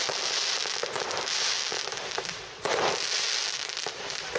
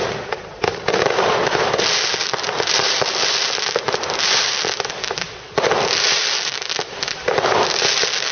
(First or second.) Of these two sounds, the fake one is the second